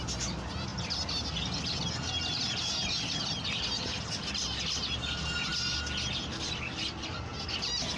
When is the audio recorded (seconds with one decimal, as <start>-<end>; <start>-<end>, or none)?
0.0-8.0